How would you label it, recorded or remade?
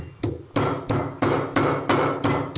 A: recorded